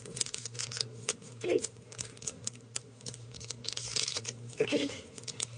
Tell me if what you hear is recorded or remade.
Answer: remade